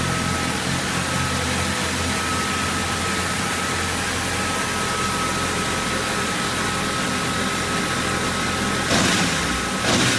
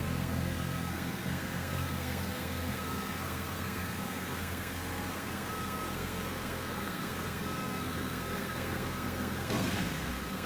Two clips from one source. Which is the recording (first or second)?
first